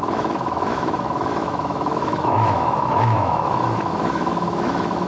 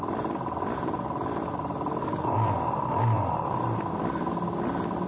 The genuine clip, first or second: second